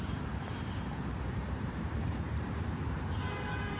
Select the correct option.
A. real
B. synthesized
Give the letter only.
B